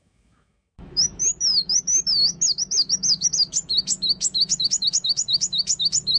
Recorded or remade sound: remade